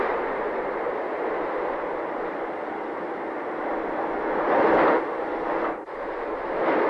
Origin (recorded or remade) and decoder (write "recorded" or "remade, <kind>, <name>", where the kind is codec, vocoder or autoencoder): remade, vocoder, BigVGAN v2